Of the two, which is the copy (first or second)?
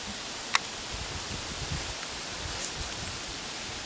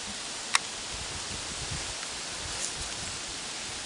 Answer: first